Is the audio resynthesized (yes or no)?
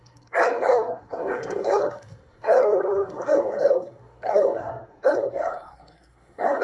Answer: yes